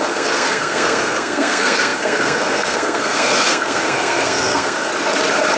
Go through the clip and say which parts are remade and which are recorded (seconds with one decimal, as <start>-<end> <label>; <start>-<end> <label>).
0.0-4.9 remade; 4.9-5.6 recorded